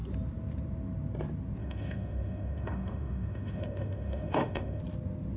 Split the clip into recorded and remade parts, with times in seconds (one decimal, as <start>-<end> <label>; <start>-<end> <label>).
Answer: 0.0-1.6 recorded; 1.6-4.8 remade; 4.8-5.4 recorded